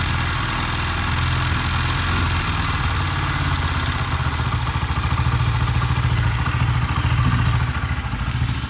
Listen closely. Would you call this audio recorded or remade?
recorded